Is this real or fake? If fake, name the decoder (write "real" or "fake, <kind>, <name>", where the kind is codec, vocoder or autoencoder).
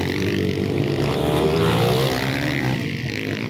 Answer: real